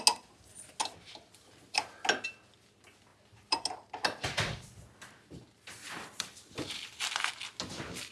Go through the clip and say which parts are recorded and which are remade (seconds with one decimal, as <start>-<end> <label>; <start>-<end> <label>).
0.0-8.1 recorded